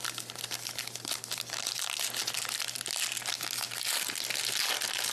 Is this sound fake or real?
real